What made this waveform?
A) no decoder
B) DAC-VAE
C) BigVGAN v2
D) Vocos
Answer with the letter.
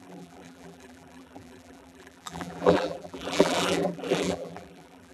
C